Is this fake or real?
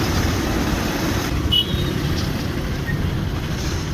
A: fake